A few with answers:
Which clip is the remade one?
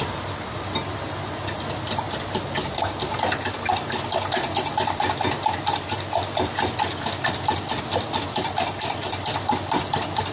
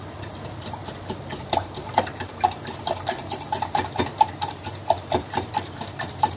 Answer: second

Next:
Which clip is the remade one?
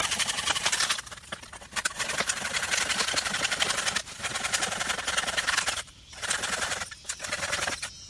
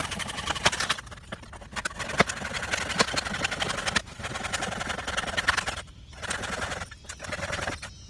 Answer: first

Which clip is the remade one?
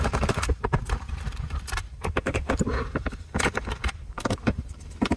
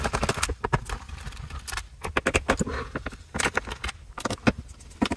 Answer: first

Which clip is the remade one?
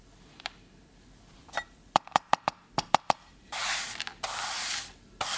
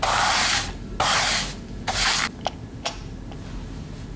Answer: first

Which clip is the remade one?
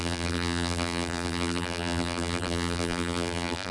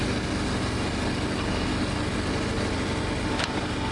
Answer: first